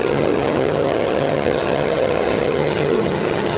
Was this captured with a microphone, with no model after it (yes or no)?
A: no